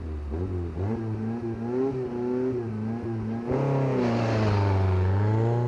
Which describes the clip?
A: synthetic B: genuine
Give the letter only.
B